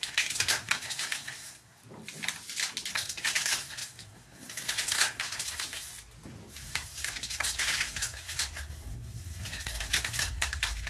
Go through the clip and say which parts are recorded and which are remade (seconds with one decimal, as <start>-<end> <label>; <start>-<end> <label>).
0.0-1.8 remade; 1.8-2.9 recorded; 2.9-5.9 remade; 5.9-6.5 recorded; 6.5-10.9 remade